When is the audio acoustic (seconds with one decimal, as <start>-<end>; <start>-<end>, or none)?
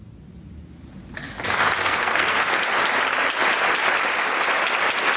0.0-1.8; 2.6-5.2